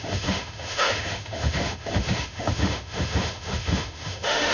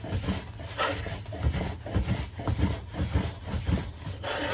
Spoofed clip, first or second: first